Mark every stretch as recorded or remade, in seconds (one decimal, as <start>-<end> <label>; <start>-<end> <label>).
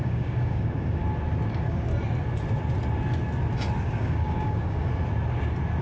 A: 0.0-1.0 remade; 1.0-1.5 recorded; 1.5-1.9 remade; 1.9-3.8 recorded; 3.8-4.9 remade; 4.9-5.8 recorded